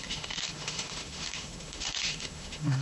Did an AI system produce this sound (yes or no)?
yes